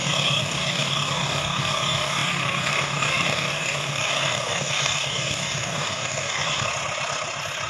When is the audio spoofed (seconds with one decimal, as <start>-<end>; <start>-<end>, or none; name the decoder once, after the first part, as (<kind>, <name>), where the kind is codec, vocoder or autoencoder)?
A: 0.0-6.7 (codec, DAC)